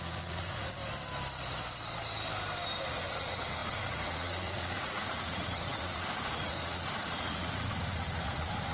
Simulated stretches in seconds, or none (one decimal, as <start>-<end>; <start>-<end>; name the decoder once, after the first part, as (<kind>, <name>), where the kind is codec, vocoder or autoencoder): 0.0-0.8 (vocoder, Vocos); 2.9-8.7